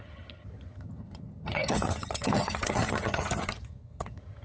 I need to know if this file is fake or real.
fake